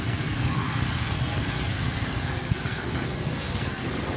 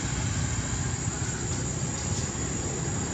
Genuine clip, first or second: second